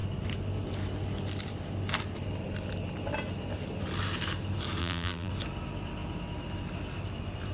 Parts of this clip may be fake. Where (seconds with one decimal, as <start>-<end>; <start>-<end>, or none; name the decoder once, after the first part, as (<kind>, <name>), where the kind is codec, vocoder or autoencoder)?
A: 4.8-5.3 (vocoder, BigVGAN v2)